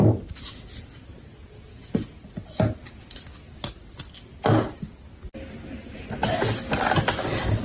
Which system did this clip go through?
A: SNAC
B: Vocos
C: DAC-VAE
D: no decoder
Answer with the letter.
D